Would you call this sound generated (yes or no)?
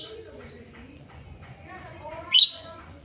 yes